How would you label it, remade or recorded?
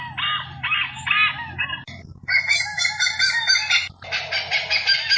recorded